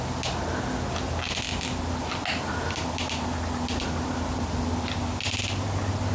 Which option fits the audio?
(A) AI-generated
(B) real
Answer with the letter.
B